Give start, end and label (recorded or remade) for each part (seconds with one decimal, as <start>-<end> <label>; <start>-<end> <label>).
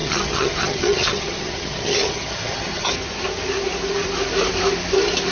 0.0-2.9 remade; 2.9-5.3 recorded